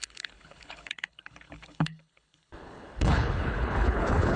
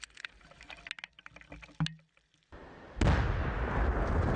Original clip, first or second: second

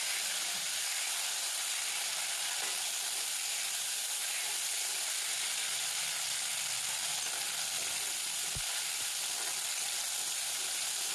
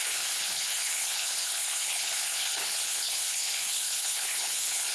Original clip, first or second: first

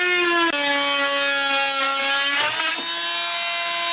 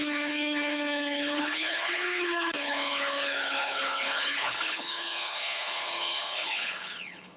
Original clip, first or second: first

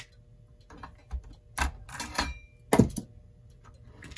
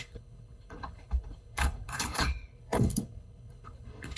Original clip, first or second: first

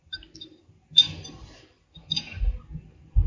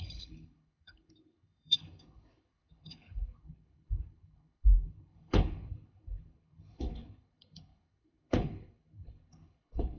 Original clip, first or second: first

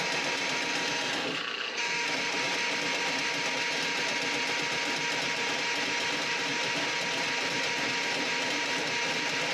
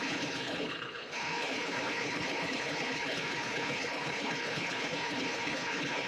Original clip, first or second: first